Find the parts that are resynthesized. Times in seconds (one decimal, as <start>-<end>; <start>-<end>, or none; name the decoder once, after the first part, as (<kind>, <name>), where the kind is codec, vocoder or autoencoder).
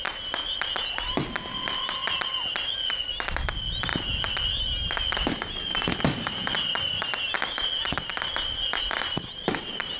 none